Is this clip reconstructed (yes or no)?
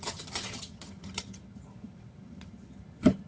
yes